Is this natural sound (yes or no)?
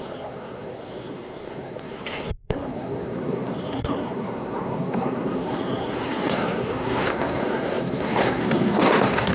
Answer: no